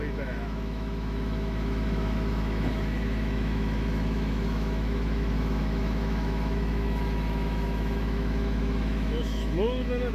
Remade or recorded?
remade